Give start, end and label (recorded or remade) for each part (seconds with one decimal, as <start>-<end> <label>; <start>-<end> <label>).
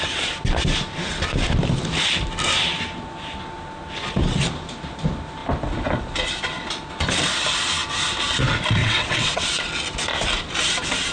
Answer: 0.0-8.8 recorded; 8.8-9.7 remade; 9.7-11.1 recorded